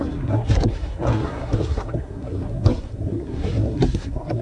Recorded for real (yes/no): no